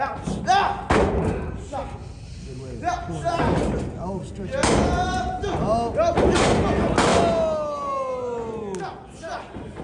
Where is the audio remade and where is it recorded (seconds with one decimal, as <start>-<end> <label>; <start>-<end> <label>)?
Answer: 0.0-9.8 recorded

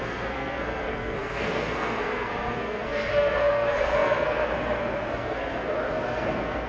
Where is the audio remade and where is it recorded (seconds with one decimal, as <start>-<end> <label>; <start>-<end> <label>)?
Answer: 0.0-6.7 remade

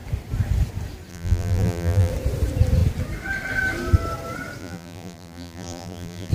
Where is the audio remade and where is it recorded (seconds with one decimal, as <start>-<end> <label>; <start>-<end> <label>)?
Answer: 0.0-1.1 recorded; 1.1-2.1 remade; 2.1-4.6 recorded; 4.6-6.3 remade

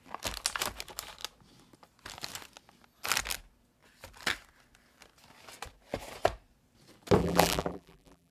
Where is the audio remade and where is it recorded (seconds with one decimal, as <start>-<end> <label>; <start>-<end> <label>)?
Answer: 0.0-7.2 recorded; 7.2-8.3 remade